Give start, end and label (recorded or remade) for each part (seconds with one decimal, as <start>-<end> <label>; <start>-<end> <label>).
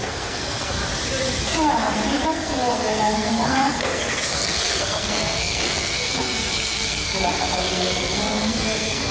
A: 0.0-0.8 remade; 0.8-1.4 recorded; 1.4-9.1 remade